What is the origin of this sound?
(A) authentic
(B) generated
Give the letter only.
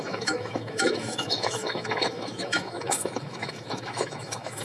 B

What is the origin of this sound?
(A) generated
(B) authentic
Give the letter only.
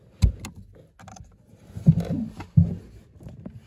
B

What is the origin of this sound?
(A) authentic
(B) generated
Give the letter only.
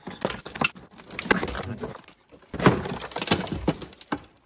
A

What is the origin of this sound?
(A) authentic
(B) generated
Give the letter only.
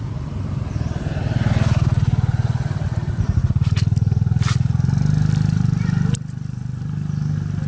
A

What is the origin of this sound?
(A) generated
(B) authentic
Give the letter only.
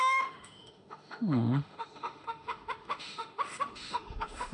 A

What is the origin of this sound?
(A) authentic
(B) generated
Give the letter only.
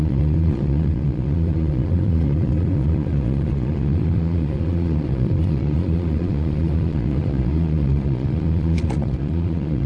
B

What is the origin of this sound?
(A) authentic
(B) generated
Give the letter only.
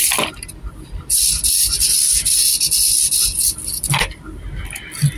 A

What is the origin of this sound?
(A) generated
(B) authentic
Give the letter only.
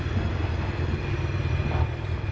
B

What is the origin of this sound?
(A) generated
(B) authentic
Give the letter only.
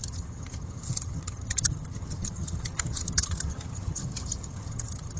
A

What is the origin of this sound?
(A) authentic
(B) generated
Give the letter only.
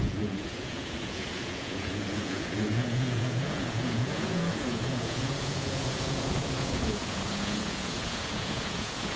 B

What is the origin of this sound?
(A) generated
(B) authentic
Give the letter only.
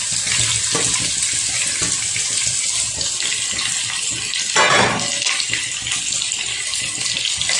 B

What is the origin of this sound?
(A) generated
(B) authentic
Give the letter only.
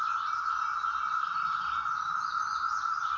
B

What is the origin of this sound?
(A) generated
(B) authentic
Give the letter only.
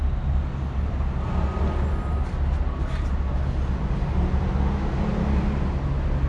B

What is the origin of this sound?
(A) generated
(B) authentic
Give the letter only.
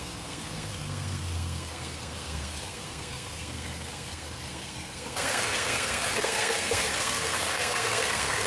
A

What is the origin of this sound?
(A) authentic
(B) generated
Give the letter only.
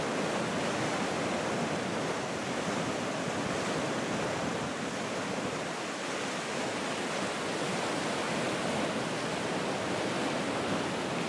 A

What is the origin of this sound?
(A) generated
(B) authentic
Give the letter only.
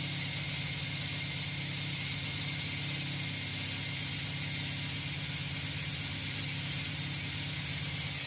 B